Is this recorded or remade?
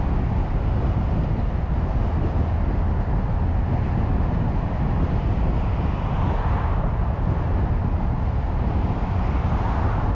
recorded